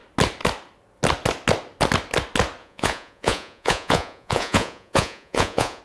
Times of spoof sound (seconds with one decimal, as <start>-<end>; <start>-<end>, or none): 2.6-5.8